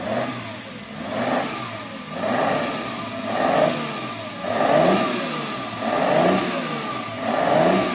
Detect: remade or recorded recorded